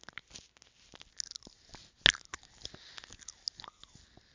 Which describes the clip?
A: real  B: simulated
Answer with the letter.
A